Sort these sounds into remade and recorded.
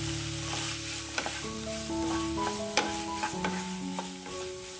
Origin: recorded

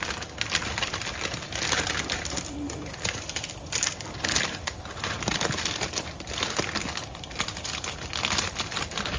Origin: recorded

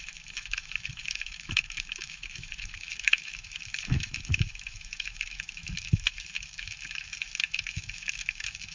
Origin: remade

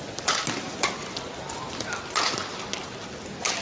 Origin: recorded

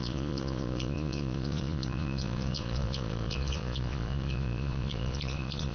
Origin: remade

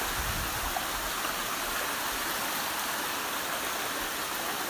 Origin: recorded